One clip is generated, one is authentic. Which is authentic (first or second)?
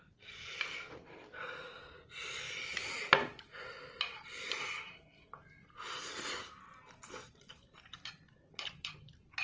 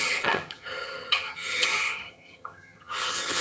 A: first